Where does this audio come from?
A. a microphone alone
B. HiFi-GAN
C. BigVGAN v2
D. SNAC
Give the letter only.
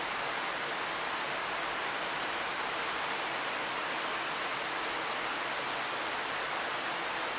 A